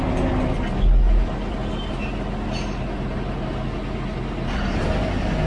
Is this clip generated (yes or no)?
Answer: no